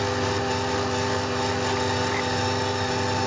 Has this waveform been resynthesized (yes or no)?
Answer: no